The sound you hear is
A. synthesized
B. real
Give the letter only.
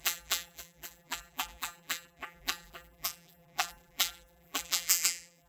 A